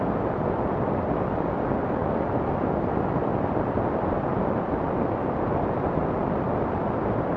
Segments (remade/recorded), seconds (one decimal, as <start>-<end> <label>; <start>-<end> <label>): 0.0-7.4 remade